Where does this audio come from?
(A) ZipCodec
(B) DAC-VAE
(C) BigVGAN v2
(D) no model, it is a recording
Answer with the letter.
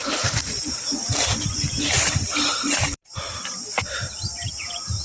C